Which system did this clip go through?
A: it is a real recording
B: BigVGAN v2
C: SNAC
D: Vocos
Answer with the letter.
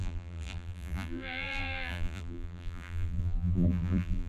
B